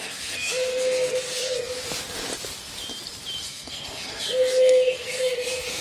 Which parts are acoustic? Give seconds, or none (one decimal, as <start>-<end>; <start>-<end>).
1.7-3.4